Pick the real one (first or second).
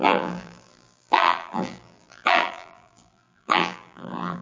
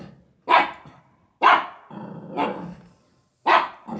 second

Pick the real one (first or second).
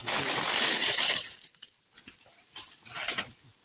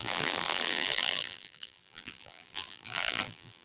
first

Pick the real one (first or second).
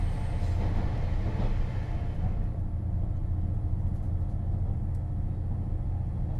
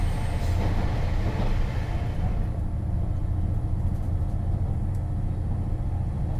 first